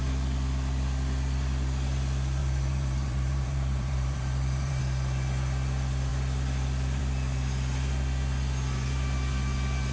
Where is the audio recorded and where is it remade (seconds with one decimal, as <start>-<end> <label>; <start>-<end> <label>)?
0.0-2.4 recorded; 2.4-4.8 remade; 4.8-9.9 recorded